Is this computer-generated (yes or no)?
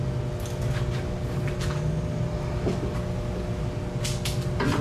no